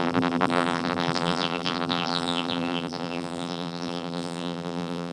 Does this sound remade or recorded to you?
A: remade